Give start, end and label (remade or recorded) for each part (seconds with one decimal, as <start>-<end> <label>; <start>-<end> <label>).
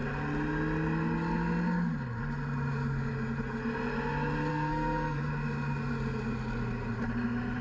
0.0-4.5 recorded; 4.5-5.2 remade; 5.2-7.6 recorded